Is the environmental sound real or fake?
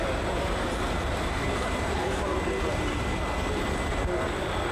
real